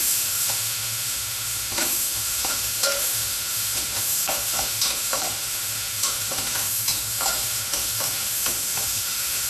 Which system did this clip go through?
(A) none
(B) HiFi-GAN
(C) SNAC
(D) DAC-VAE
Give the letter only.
D